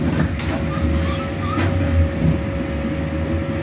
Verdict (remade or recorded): recorded